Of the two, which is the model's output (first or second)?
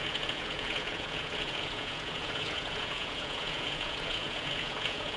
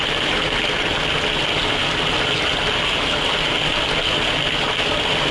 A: first